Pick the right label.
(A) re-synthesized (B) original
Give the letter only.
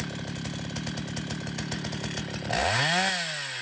B